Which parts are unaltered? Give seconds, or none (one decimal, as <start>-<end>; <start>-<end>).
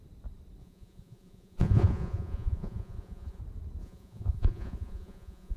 0.0-0.6; 3.4-3.8